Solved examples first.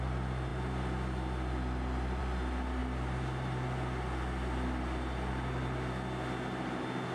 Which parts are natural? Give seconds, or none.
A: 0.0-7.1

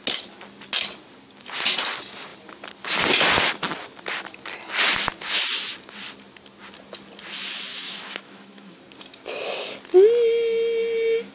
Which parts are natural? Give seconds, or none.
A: 0.0-7.7; 8.8-11.3